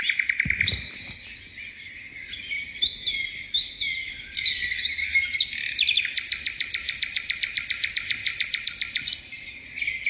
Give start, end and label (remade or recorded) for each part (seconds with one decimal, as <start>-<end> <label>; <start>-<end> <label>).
0.0-10.1 recorded